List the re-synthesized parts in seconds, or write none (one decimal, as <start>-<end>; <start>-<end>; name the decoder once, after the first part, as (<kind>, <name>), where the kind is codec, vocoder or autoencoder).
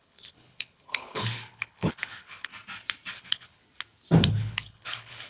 0.0-2.5 (codec, HILCodec); 3.1-3.6; 4.3-5.3